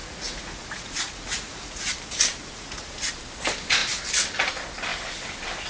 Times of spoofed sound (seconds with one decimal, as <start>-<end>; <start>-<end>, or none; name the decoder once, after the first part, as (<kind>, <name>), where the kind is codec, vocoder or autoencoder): 0.0-1.9 (vocoder, Vocos); 2.4-3.1